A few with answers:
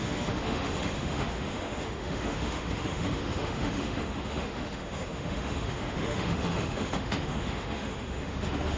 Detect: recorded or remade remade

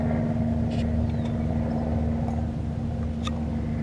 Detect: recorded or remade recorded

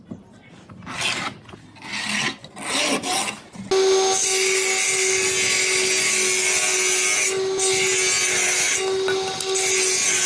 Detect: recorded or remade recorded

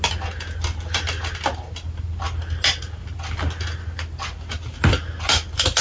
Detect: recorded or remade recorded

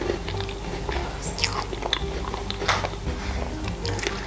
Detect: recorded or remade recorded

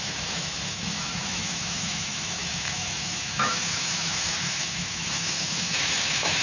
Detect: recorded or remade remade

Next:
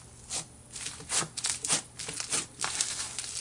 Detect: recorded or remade recorded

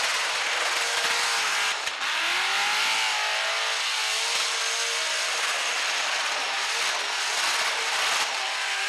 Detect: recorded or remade recorded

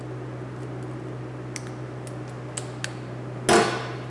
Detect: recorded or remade recorded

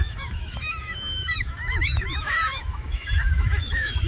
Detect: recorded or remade remade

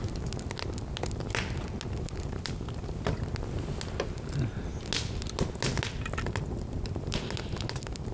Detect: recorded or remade recorded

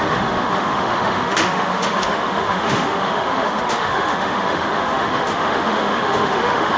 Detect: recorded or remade remade